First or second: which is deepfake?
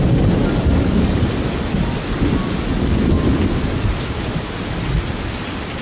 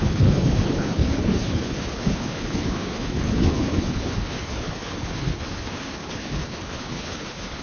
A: second